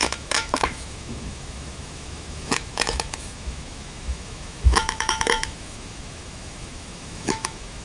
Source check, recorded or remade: remade